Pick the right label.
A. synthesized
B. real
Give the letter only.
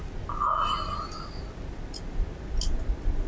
B